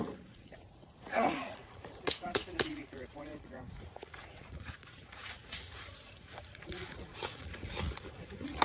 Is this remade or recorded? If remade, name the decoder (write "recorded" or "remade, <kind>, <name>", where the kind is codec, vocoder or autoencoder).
remade, vocoder, Vocos